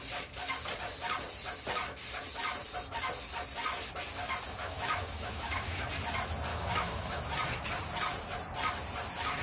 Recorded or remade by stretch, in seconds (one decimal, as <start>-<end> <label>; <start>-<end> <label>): 0.0-4.6 recorded; 4.6-5.9 remade; 5.9-6.5 recorded; 6.5-7.2 remade; 7.2-9.4 recorded